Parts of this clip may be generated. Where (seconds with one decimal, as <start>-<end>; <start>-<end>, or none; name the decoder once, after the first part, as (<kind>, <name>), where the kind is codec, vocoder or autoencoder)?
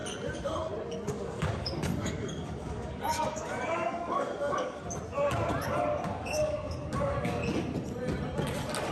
1.1-4.8 (codec, DAC); 5.7-7.4